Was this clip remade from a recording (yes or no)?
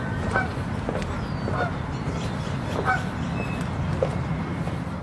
no